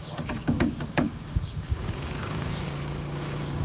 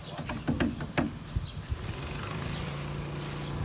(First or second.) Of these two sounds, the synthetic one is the first